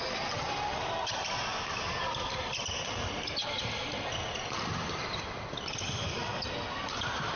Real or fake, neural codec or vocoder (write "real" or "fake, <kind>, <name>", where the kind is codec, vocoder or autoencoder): real